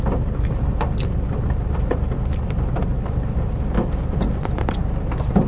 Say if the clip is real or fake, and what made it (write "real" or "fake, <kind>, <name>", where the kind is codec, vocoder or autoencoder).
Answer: real